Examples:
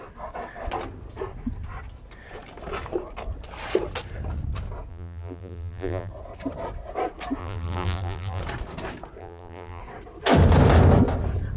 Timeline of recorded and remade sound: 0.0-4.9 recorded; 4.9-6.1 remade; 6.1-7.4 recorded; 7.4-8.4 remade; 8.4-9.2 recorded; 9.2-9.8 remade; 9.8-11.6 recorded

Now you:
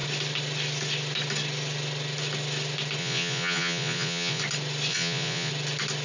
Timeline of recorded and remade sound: 0.0-3.0 recorded; 3.0-4.4 remade; 4.4-4.9 recorded; 4.9-5.5 remade; 5.5-6.0 recorded

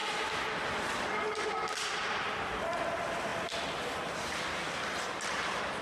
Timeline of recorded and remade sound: 0.0-5.8 recorded